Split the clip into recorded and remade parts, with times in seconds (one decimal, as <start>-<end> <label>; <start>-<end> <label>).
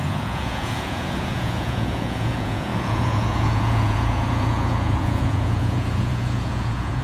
0.0-7.0 remade